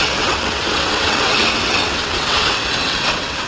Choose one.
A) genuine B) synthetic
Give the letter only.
B